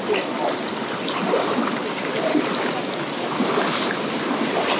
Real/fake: real